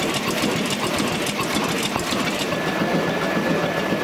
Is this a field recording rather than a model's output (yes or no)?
yes